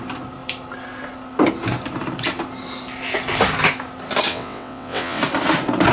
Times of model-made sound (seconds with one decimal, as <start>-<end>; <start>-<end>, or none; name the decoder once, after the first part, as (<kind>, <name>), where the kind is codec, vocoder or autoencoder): 4.3-5.2 (vocoder, WaveNeXt)